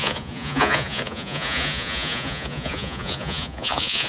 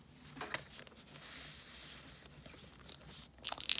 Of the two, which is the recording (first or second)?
second